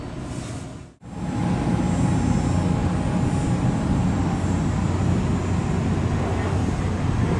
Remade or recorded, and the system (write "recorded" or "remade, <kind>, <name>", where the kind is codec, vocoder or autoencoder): recorded